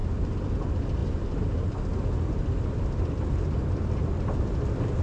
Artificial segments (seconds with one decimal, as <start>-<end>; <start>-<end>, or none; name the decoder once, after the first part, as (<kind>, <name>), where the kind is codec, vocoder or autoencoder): none